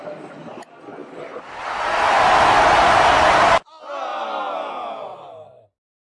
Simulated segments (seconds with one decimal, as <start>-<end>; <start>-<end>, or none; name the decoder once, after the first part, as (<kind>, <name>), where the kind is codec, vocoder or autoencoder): none